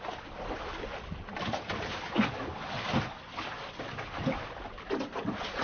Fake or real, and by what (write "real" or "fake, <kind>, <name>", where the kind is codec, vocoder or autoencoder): real